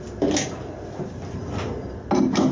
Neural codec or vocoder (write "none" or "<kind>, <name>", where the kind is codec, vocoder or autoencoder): none